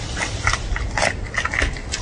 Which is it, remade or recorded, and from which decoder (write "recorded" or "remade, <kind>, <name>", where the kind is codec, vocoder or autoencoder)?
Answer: recorded